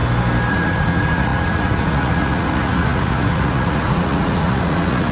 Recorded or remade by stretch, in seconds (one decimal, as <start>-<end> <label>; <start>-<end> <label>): 0.0-0.5 recorded; 0.5-5.1 remade